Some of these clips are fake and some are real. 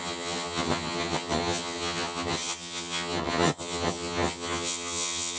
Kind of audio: fake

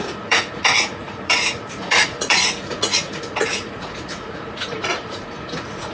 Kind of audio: fake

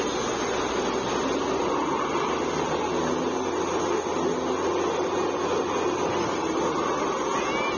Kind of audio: real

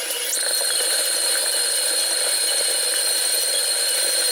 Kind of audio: real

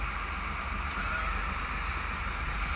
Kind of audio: real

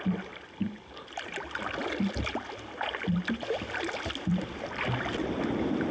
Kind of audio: real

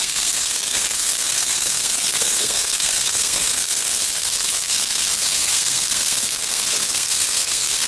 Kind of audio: fake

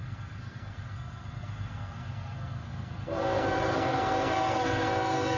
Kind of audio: fake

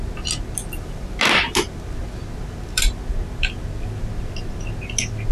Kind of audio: real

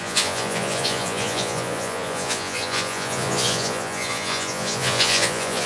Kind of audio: fake